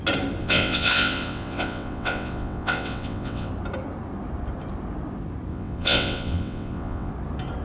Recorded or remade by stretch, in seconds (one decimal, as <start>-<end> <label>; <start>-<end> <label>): 0.0-0.4 recorded; 0.4-3.5 remade; 3.5-5.5 recorded; 5.5-7.1 remade; 7.1-7.6 recorded